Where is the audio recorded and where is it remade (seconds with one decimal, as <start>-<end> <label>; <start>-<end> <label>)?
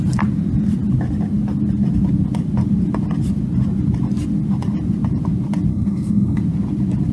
0.0-5.7 recorded; 5.7-6.4 remade; 6.4-7.1 recorded